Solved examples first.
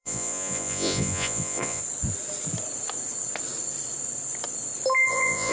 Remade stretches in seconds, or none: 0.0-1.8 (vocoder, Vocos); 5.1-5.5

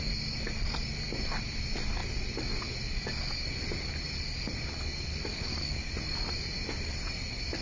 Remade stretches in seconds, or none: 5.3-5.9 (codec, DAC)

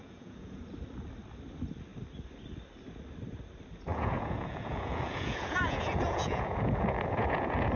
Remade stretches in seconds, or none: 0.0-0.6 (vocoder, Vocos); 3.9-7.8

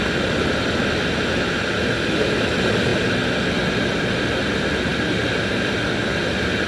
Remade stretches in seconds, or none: 4.9-5.5 (vocoder, BigVGAN v2)

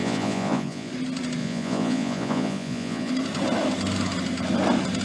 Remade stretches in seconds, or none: 0.0-0.9 (vocoder, Vocos); 1.4-3.1

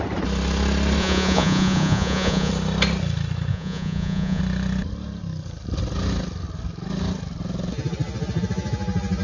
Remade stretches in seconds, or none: 1.0-2.5 (vocoder, Vocos); 3.5-4.4

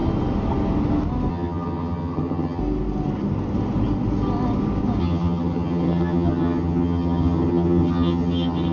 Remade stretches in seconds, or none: 1.3-2.6 (vocoder, HiFi-GAN); 5.0-8.7

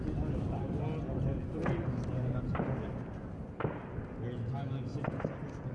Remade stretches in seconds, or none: 1.5-4.0 (vocoder, BigVGAN v2)